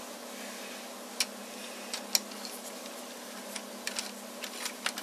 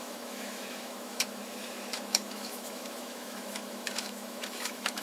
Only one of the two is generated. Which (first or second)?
second